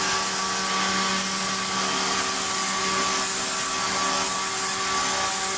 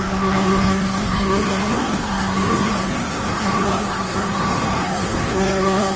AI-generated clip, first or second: second